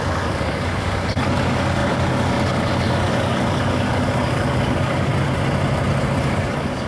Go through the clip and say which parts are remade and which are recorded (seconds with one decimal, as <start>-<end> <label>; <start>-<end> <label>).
0.0-5.1 remade; 5.1-6.2 recorded; 6.2-6.9 remade